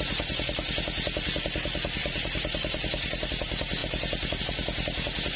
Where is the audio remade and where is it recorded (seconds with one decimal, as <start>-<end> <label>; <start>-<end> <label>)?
0.0-2.0 recorded; 2.0-3.3 remade; 3.3-3.8 recorded; 3.8-4.4 remade; 4.4-5.4 recorded